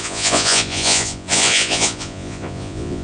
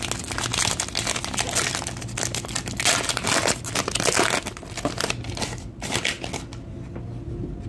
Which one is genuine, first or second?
second